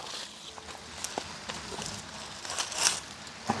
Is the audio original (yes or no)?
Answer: yes